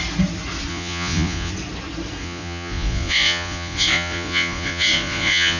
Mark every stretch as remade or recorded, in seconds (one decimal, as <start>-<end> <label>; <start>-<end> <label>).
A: 0.0-0.7 recorded; 0.7-1.5 remade; 1.5-2.2 recorded; 2.2-5.6 remade